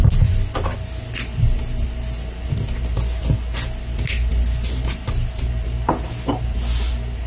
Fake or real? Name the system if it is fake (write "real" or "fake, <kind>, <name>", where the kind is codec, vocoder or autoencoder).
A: real